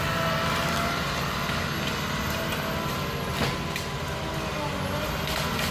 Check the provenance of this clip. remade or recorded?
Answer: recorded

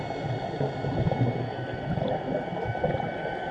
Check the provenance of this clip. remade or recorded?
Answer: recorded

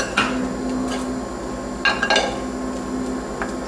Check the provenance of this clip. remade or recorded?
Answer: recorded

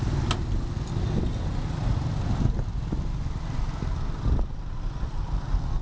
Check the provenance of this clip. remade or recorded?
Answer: recorded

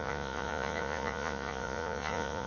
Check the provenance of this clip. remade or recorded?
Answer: remade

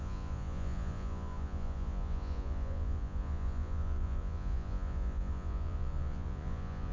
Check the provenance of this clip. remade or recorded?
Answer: remade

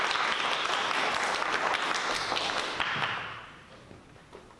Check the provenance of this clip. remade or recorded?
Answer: recorded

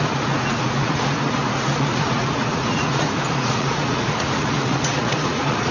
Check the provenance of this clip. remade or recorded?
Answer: remade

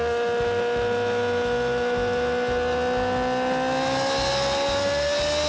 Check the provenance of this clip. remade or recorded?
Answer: recorded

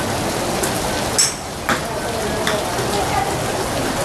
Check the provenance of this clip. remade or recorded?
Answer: recorded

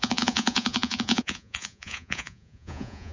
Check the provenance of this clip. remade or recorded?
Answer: remade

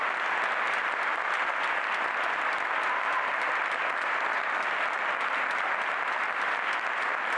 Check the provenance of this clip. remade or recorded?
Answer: recorded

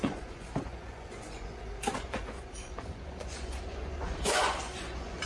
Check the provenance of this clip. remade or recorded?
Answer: remade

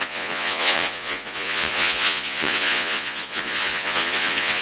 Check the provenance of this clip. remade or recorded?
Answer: remade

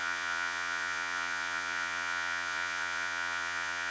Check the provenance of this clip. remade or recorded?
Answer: remade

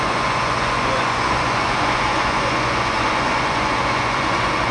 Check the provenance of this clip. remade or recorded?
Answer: remade